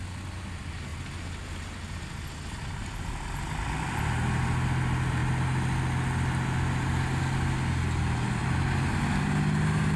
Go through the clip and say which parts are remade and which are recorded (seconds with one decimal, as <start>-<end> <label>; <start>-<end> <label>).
0.0-10.0 recorded